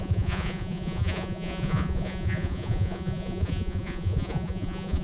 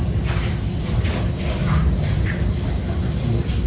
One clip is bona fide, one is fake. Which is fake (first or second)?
first